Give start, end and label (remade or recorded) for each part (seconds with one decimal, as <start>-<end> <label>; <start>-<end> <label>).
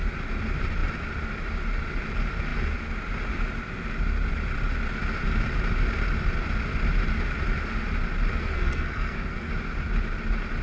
0.0-8.3 recorded; 8.3-9.5 remade; 9.5-10.6 recorded